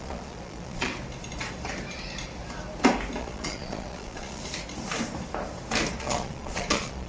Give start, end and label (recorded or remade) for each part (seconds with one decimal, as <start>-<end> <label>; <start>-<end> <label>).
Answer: 0.0-0.9 remade; 0.9-3.2 recorded; 3.2-4.4 remade; 4.4-6.0 recorded; 6.0-7.1 remade